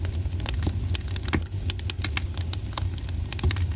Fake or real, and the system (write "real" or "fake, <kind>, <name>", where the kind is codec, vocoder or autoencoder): real